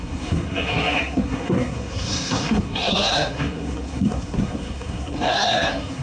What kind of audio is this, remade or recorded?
remade